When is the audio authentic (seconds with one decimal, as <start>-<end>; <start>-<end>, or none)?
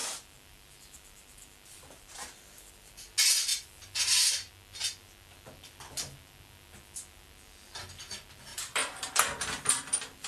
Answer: 3.1-3.5; 4.5-8.5